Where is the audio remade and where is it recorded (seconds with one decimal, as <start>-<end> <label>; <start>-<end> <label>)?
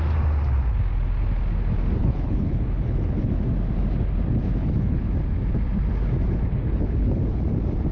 0.0-2.0 recorded; 2.0-3.3 remade; 3.3-4.6 recorded; 4.6-5.1 remade; 5.1-6.5 recorded; 6.5-7.4 remade; 7.4-7.9 recorded